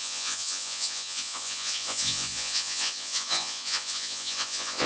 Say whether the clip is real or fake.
fake